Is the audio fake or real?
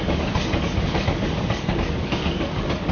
fake